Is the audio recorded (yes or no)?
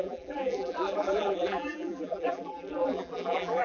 no